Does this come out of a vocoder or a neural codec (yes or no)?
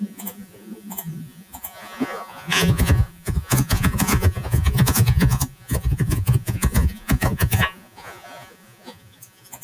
yes